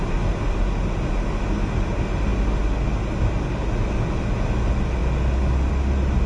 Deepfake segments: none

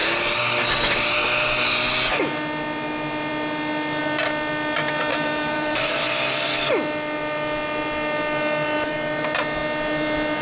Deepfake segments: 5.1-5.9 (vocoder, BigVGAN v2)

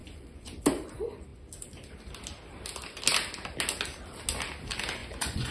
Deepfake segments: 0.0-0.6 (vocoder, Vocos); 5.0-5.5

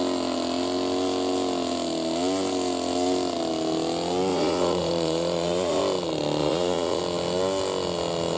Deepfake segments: 4.3-5.8 (vocoder, Vocos); 6.4-7.0

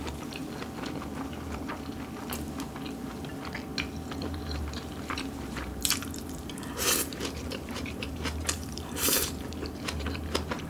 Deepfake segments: 0.0-0.4 (vocoder, BigVGAN v2); 4.2-10.7

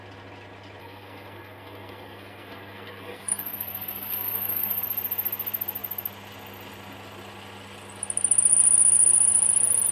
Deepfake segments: 0.8-4.8 (codec, SNAC)